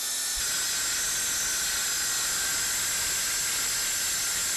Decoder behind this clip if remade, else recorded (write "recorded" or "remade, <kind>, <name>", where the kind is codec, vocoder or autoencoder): recorded